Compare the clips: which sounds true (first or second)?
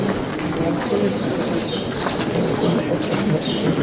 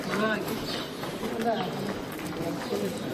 first